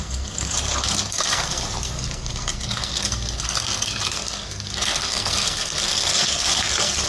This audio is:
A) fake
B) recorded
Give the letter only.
A